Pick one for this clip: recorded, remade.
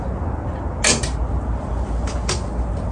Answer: recorded